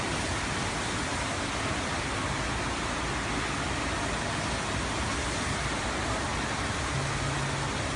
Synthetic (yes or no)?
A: no